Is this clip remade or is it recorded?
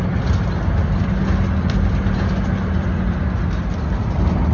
recorded